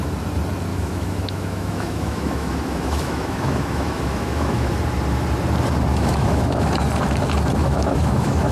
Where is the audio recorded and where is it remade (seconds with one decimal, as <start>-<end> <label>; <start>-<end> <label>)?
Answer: 0.0-0.7 recorded; 0.7-4.7 remade; 4.7-5.9 recorded; 5.9-6.7 remade; 6.7-7.6 recorded; 7.6-8.5 remade